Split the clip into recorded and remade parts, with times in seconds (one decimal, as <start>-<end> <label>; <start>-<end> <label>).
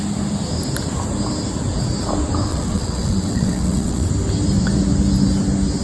0.0-2.5 recorded; 2.5-4.1 remade; 4.1-5.8 recorded